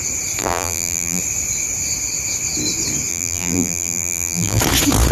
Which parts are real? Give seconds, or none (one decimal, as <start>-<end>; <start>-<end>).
0.0-0.4; 1.2-3.1; 4.6-5.1